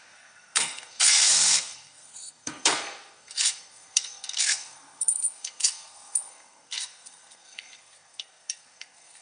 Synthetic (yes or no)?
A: yes